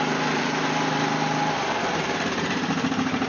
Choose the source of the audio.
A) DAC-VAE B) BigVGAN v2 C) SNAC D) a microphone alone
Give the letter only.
B